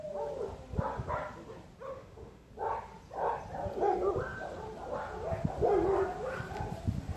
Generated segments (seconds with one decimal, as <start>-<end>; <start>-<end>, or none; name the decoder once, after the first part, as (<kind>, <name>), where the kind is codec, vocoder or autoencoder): 1.9-2.5 (autoencoder, DAC-VAE)